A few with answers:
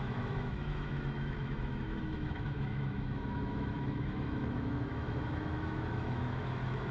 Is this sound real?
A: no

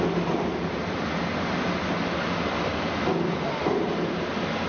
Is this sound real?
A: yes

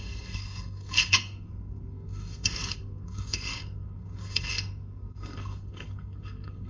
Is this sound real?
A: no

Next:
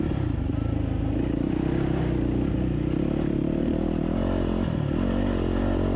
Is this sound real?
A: yes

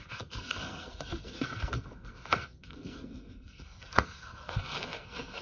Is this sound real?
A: no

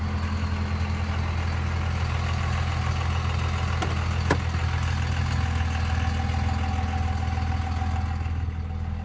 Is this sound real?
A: yes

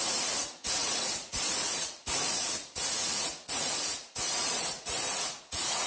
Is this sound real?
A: no